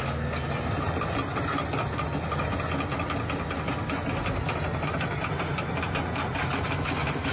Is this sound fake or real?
real